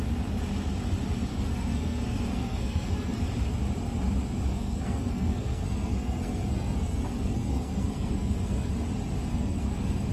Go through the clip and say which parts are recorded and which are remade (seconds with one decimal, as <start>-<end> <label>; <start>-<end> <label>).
0.0-1.3 recorded; 1.3-3.2 remade; 3.2-4.5 recorded; 4.5-8.7 remade; 8.7-9.3 recorded; 9.3-10.1 remade